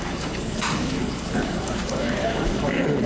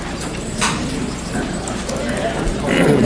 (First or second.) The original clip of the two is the second